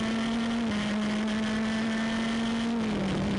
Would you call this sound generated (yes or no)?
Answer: no